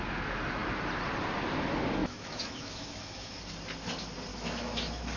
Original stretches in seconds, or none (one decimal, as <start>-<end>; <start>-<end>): 0.0-2.0; 3.4-4.3

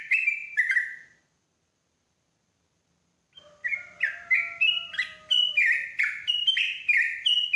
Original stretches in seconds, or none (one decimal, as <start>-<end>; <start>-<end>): 0.0-7.6

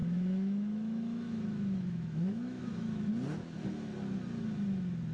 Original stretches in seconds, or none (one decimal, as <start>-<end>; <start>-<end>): 3.1-5.1

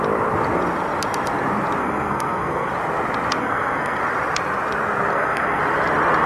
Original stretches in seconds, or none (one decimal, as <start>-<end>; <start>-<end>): 0.0-1.8; 2.7-3.4; 4.0-5.1; 5.6-6.3

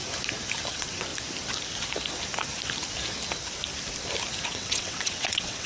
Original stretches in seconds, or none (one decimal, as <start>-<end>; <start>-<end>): 0.0-0.7; 1.1-4.5

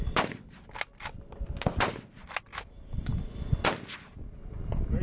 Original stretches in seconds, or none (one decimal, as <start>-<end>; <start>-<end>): 0.0-5.0

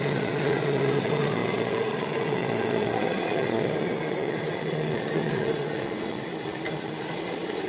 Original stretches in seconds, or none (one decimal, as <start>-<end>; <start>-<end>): none